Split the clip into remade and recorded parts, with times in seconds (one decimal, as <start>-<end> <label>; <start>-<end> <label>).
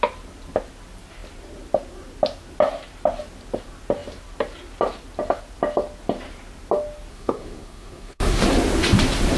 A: 0.0-7.1 recorded; 7.1-8.4 remade; 8.4-9.4 recorded